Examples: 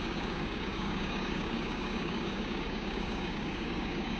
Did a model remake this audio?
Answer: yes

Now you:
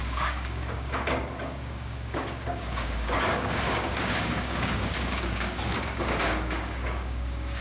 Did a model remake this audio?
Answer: yes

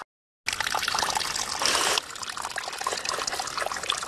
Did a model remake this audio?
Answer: no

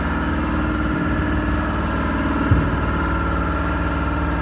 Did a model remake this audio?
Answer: no